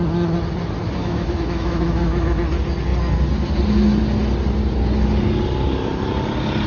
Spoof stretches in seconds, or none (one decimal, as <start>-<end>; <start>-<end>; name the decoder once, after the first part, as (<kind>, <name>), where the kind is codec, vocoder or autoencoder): 1.0-2.4 (autoencoder, DAC-VAE)